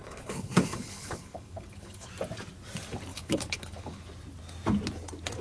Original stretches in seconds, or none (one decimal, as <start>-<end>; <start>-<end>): 2.1-3.1; 4.1-5.4